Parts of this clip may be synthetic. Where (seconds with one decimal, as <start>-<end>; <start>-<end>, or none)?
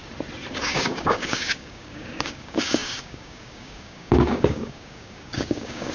0.5-5.9